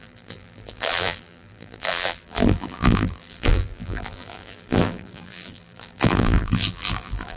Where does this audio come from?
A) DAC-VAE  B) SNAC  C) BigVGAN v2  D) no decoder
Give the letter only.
C